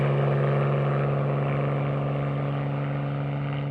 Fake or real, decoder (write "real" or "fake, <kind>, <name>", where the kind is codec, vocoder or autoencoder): real